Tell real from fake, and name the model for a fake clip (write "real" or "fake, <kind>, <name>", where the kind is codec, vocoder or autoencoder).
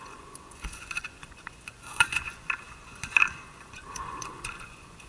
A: fake, vocoder, Vocos